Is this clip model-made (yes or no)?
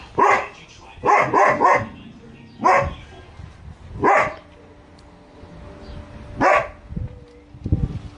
no